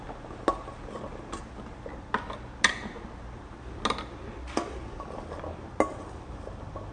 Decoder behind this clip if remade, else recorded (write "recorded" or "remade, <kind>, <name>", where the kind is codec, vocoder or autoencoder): recorded